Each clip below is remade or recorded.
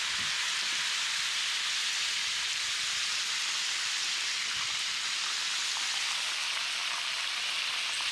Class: recorded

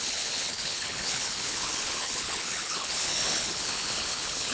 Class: remade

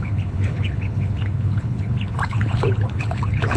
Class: remade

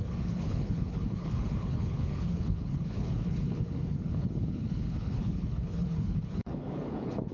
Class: remade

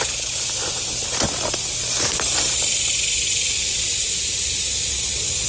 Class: recorded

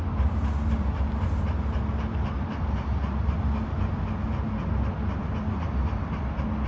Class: recorded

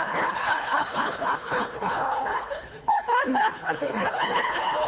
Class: remade